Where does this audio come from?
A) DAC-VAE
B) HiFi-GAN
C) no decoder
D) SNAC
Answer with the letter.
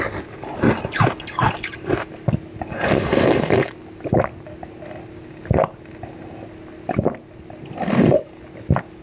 C